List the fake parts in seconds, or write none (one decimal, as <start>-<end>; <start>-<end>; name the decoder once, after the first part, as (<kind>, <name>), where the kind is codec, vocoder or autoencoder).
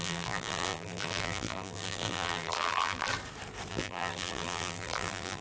0.0-3.1 (vocoder, BigVGAN v2); 3.7-5.4